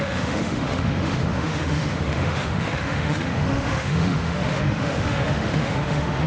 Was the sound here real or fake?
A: fake